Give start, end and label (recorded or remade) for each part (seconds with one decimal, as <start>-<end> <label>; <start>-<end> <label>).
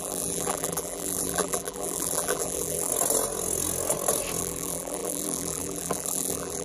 0.0-2.9 remade; 2.9-4.4 recorded; 4.4-6.6 remade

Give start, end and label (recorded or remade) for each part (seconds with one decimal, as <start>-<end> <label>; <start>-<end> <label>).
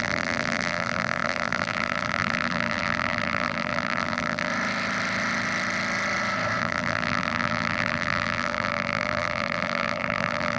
0.0-4.5 remade; 4.5-6.6 recorded; 6.6-10.6 remade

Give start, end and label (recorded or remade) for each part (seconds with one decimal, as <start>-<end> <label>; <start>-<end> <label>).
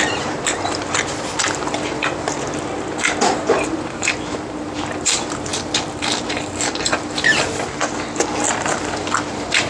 0.0-5.5 remade; 5.5-6.3 recorded; 6.3-9.7 remade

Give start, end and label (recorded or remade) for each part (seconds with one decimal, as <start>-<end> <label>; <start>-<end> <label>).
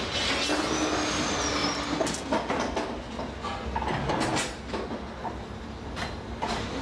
0.0-6.8 recorded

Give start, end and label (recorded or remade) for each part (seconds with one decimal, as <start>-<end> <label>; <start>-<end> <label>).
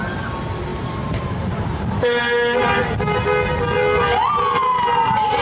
0.0-0.7 recorded; 0.7-2.2 remade; 2.2-4.7 recorded; 4.7-5.4 remade